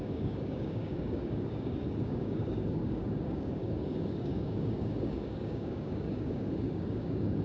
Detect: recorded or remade remade